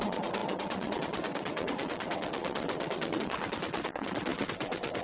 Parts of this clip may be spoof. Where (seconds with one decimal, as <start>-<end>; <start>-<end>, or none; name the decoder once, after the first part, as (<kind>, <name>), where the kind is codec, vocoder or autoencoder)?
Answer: 0.0-5.0 (vocoder, WaveNeXt)